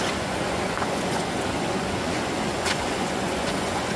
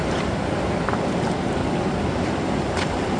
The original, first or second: second